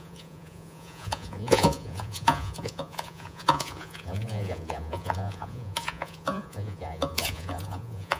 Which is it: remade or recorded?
remade